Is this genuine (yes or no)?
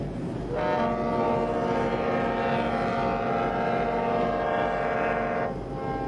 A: yes